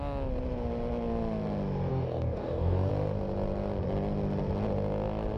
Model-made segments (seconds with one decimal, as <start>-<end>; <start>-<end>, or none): 1.9-2.9